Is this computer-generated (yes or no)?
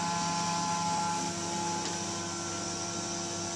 no